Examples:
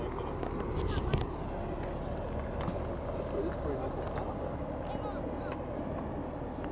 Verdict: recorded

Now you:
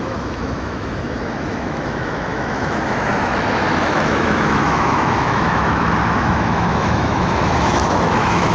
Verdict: remade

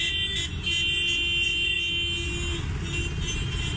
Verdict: recorded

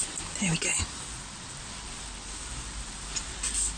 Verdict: recorded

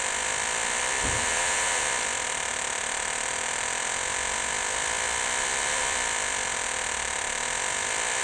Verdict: remade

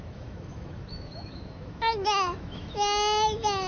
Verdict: remade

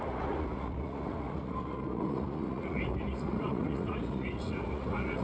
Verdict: remade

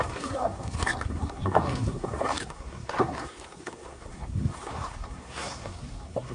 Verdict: remade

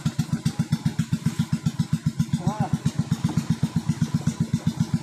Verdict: recorded